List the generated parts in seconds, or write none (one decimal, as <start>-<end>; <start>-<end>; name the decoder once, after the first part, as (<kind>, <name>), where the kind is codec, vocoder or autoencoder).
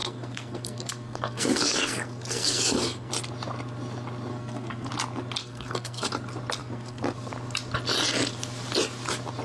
0.0-3.1 (codec, SNAC); 4.3-4.9; 5.4-6.1; 6.6-7.3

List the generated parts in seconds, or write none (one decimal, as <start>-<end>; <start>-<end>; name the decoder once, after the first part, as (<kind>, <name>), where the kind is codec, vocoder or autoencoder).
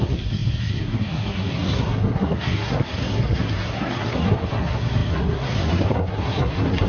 0.0-6.9 (codec, SNAC)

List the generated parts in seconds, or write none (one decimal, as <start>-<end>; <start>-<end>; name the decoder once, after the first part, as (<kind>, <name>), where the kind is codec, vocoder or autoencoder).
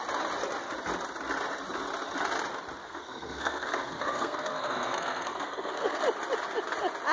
2.8-6.0 (codec, SNAC)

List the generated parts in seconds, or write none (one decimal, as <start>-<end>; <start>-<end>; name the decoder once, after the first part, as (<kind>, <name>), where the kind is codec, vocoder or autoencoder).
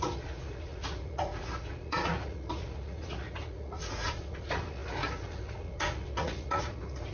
0.0-7.1 (vocoder, Vocos)